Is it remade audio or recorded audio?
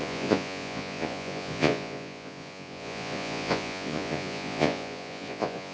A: remade